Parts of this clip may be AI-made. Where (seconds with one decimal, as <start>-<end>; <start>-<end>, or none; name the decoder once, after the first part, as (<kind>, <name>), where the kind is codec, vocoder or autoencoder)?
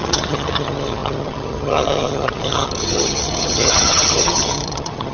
0.0-5.1 (vocoder, HiFi-GAN)